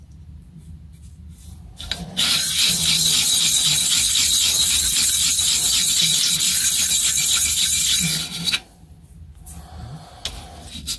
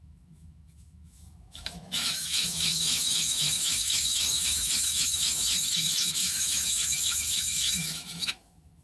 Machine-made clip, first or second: second